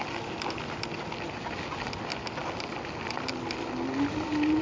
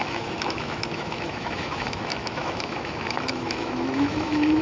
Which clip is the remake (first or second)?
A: second